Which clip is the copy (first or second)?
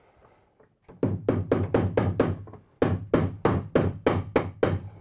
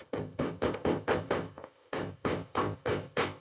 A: second